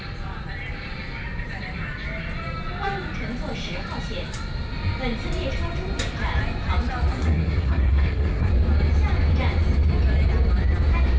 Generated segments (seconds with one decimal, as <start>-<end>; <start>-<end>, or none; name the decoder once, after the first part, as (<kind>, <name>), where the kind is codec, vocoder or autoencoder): 7.1-8.5 (codec, SNAC)